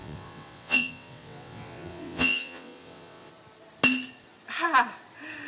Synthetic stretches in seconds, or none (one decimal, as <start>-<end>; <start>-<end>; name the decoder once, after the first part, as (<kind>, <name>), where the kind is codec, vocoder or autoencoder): 0.0-3.3 (vocoder, WaveNeXt)